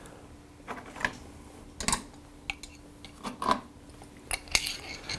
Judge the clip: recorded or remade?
recorded